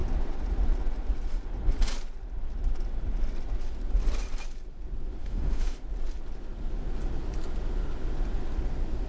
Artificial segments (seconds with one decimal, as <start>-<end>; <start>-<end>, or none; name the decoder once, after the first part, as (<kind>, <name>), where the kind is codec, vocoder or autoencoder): 5.2-5.8 (autoencoder, DAC-VAE)